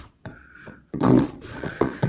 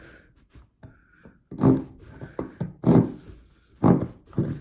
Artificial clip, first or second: first